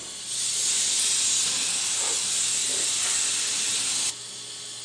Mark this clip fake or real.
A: real